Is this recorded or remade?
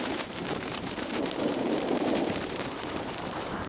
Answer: remade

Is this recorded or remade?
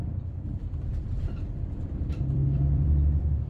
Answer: remade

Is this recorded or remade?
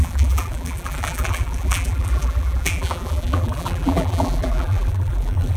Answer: remade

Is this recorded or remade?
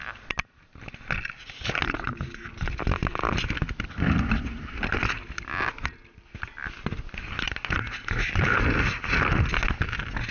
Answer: recorded